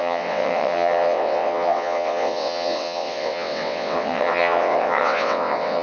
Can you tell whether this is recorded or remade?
remade